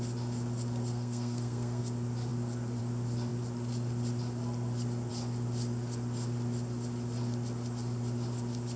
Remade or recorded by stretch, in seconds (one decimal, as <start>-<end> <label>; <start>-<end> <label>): 0.0-0.9 recorded; 0.9-1.8 remade; 1.8-8.8 recorded